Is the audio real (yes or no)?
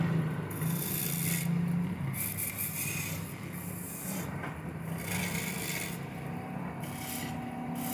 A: yes